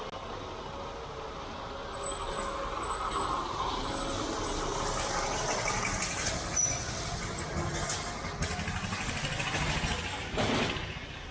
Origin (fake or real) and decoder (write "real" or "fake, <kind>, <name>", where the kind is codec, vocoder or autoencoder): real